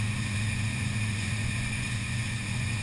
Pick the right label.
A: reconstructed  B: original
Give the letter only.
A